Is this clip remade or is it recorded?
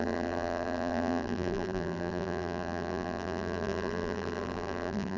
remade